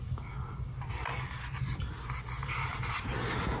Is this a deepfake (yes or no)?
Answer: no